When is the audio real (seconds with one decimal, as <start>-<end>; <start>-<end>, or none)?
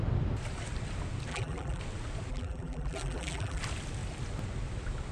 0.0-1.3; 1.8-2.3; 3.6-5.1